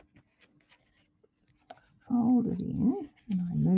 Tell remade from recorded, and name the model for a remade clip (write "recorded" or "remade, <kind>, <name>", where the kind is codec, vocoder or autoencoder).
recorded